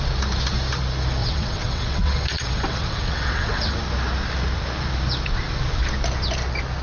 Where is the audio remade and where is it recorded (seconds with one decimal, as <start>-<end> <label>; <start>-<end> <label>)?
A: 0.0-1.2 recorded; 1.2-3.8 remade; 3.8-6.8 recorded